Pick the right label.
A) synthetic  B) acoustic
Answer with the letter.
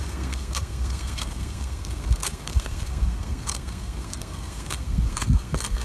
A